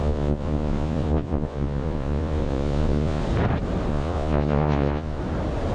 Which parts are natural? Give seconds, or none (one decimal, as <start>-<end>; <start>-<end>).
3.2-3.9; 5.2-5.7